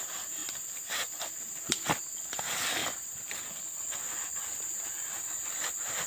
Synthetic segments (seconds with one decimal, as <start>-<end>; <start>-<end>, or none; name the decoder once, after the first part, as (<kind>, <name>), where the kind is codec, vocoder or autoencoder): 2.8-3.5 (vocoder, BigVGAN v2)